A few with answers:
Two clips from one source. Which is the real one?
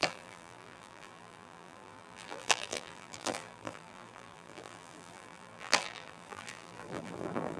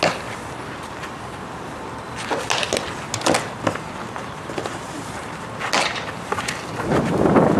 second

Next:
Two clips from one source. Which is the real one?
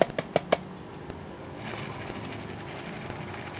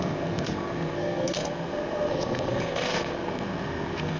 first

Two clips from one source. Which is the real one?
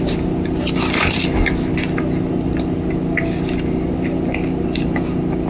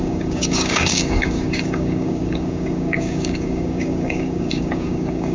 first